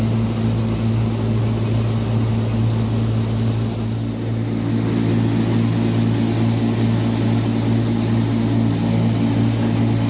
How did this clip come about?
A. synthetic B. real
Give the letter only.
B